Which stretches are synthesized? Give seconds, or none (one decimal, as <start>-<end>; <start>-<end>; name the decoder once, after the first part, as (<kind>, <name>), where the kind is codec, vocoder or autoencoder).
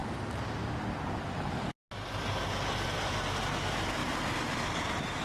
4.0-5.2 (vocoder, BigVGAN v2)